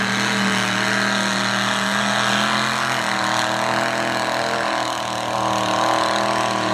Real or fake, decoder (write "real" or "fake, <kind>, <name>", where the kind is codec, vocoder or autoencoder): real